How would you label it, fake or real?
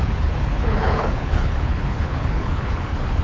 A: fake